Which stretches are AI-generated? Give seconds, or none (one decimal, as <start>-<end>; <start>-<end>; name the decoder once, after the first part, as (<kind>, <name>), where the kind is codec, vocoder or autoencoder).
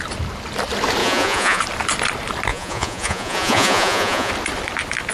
1.0-1.6 (vocoder, Vocos); 2.5-4.3